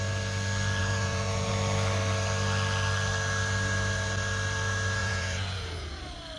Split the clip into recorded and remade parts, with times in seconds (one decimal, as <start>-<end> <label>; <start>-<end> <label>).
0.0-0.8 recorded; 0.8-1.5 remade; 1.5-5.0 recorded; 5.0-6.0 remade; 6.0-6.4 recorded